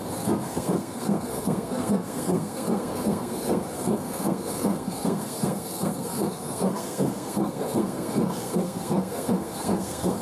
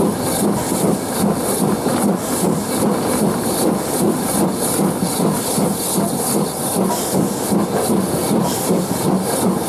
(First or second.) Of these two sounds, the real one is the second